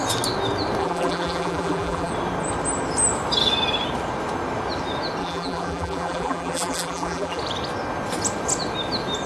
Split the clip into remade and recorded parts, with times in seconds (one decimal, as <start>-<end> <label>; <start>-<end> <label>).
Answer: 0.0-0.8 recorded; 0.8-2.1 remade; 2.1-5.2 recorded; 5.2-7.4 remade; 7.4-9.3 recorded